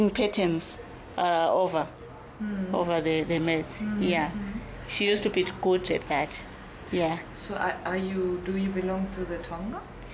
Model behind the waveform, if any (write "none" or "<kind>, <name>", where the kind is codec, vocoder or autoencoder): none